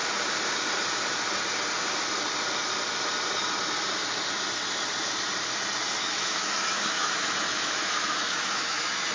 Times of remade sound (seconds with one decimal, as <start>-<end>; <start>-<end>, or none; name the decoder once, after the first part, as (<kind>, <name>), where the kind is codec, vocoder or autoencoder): 6.0-9.1 (autoencoder, DAC-VAE)